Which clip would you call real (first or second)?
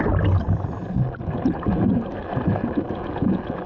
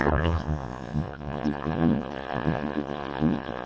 first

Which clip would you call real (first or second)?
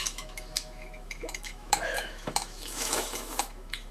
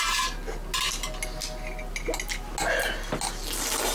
second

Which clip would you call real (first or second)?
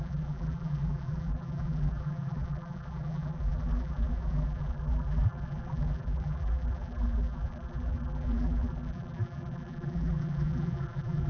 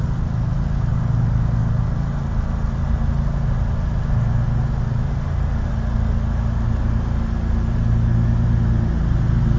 second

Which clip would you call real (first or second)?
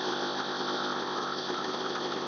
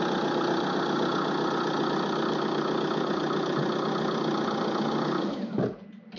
second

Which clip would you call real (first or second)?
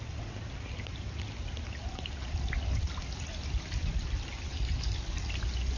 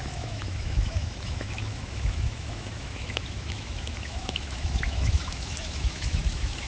first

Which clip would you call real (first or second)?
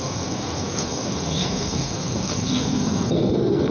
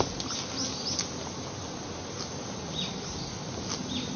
second